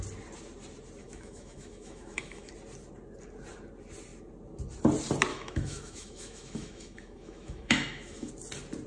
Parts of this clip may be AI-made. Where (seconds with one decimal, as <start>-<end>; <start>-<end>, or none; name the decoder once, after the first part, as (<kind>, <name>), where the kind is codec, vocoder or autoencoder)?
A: 1.0-2.5 (autoencoder, DAC-VAE); 5.3-8.3